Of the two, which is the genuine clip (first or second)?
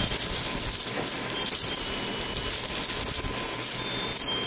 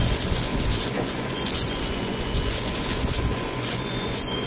first